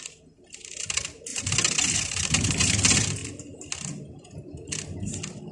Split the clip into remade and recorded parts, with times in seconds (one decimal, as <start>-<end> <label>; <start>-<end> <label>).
0.0-5.5 recorded